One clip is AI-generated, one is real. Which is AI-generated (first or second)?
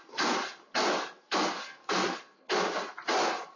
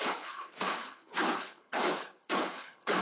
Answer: second